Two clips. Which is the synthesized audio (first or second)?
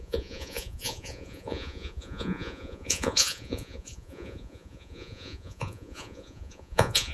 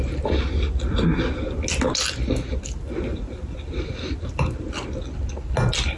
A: first